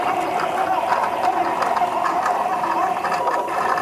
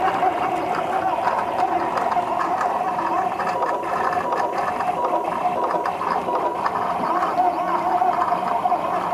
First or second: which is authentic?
first